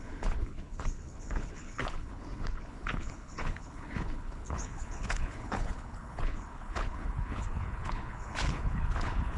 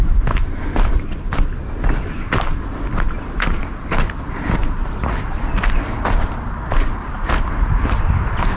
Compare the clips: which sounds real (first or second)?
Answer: second